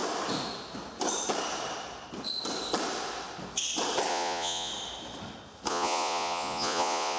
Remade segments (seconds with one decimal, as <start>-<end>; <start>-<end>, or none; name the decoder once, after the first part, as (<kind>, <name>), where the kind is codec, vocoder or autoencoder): 4.1-4.7 (vocoder, Vocos); 5.7-7.2